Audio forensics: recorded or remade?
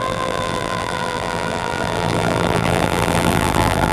remade